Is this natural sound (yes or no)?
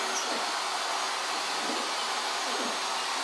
yes